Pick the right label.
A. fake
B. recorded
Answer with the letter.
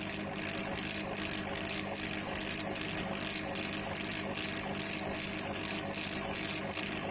B